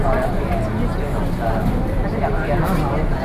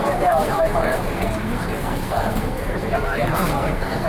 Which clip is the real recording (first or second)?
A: first